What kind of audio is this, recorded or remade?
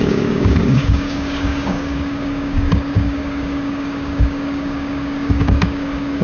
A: remade